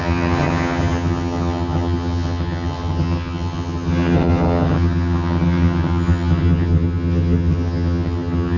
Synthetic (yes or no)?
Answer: yes